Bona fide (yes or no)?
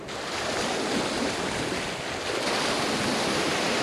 yes